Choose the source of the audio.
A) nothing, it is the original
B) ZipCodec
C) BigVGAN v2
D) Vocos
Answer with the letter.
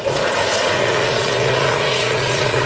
D